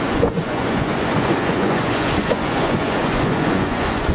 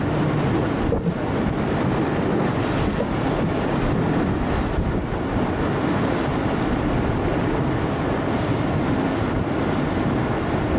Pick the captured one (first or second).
second